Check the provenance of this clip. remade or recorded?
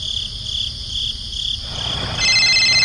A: recorded